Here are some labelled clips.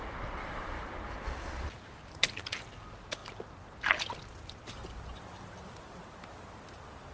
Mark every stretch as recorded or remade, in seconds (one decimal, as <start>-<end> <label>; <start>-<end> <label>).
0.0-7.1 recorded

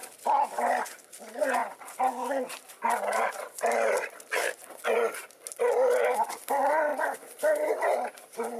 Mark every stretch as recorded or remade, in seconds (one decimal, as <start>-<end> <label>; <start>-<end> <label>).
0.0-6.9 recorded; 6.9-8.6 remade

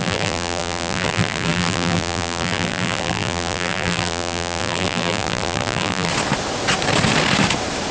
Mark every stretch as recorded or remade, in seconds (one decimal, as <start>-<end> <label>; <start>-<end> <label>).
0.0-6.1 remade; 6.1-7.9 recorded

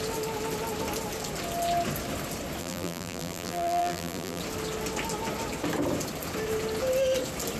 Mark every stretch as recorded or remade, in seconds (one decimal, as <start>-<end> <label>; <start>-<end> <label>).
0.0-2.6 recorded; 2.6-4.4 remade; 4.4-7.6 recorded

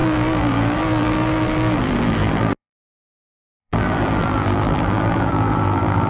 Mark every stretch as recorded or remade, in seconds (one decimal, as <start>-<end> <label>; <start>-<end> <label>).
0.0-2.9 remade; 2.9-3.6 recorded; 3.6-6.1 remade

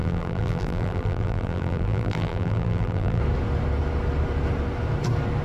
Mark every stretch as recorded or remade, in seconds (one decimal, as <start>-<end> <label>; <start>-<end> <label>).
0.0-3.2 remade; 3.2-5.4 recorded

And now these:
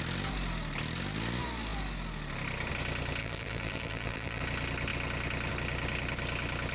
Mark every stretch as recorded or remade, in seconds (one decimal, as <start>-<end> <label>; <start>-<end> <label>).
0.0-3.2 recorded; 3.2-4.4 remade; 4.4-6.7 recorded

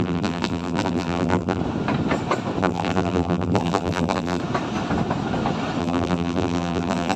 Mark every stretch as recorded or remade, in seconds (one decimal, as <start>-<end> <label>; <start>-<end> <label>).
0.0-1.6 remade; 1.6-2.6 recorded; 2.6-4.4 remade; 4.4-5.8 recorded; 5.8-7.2 remade